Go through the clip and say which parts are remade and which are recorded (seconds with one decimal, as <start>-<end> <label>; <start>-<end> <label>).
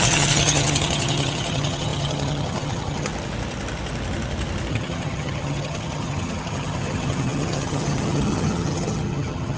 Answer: 0.0-3.1 remade; 3.1-4.7 recorded; 4.7-9.6 remade